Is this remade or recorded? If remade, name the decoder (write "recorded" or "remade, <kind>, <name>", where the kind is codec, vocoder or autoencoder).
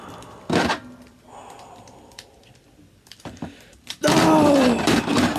remade, vocoder, BigVGAN v2